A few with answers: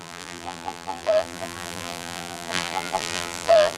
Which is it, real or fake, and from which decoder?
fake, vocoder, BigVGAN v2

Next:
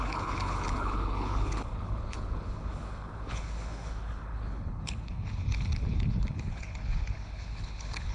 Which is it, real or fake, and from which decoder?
fake, codec, HILCodec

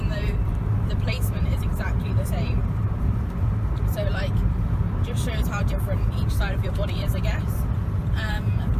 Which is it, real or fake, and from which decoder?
fake, vocoder, BigVGAN v2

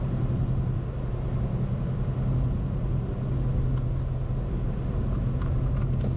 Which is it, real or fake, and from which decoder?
real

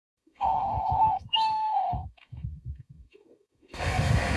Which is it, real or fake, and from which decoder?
fake, autoencoder, DAC-VAE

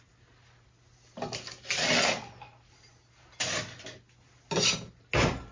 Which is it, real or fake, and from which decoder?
real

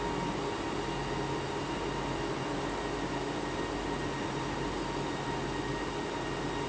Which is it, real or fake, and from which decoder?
real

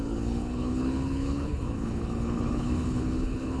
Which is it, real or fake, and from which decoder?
fake, codec, HILCodec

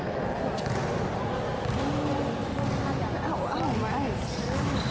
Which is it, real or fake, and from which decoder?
real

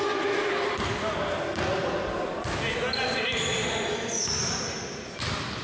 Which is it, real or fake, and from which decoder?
real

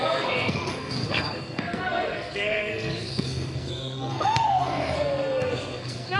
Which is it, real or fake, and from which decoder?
fake, codec, SNAC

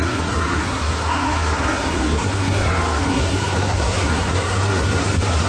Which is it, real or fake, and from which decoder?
fake, codec, SNAC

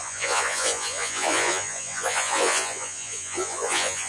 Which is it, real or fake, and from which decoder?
fake, vocoder, Vocos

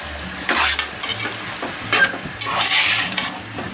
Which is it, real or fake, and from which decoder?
real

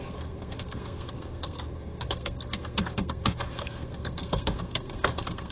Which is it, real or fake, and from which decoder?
fake, codec, SNAC